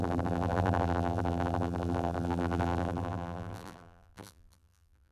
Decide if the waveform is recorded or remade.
remade